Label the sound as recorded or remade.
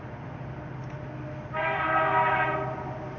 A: recorded